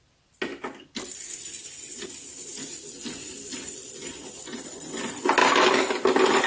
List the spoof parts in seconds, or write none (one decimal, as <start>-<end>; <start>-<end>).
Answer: 0.5-2.9